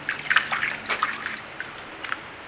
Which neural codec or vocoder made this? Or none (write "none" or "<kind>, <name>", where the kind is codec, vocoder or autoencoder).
none